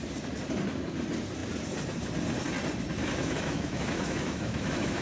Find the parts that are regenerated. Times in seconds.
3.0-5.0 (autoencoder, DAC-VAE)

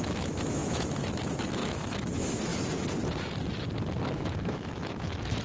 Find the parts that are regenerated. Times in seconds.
0.0-2.5 (autoencoder, DAC-VAE); 4.0-5.4

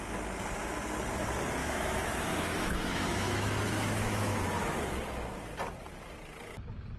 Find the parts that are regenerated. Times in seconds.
1.6-4.4 (autoencoder, DAC-VAE)

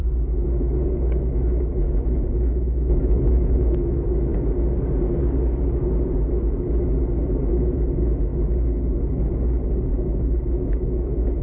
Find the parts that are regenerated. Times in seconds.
0.0-4.3 (autoencoder, DAC-VAE); 7.2-8.3; 9.9-11.4

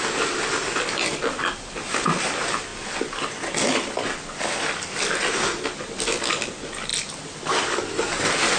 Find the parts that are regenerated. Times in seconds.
none

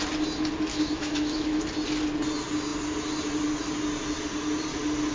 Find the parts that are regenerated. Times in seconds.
0.7-1.6 (autoencoder, DAC-VAE)

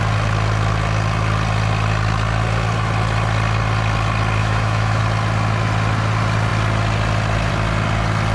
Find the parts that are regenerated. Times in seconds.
4.4-5.0 (autoencoder, DAC-VAE)

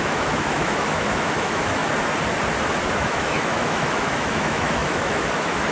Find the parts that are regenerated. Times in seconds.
0.0-1.8 (autoencoder, DAC-VAE); 2.9-5.7